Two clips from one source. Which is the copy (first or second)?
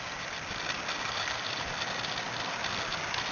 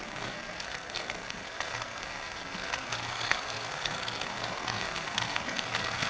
second